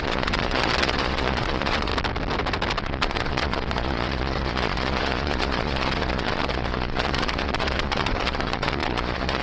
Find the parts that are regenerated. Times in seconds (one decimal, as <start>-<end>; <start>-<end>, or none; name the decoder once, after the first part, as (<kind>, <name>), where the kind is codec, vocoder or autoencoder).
0.0-1.9 (vocoder, Vocos); 2.8-9.4